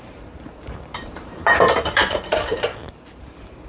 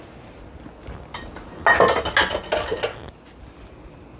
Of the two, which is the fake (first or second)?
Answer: first